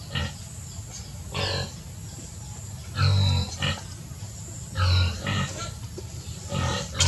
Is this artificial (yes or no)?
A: no